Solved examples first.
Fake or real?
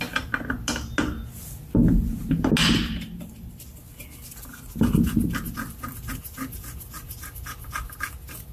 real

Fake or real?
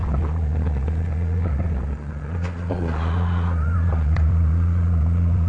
fake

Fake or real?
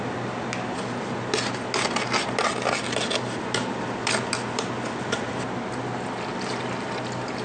real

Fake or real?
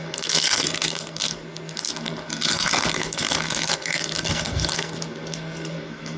fake